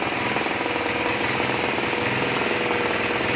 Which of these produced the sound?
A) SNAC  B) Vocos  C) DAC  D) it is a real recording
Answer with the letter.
D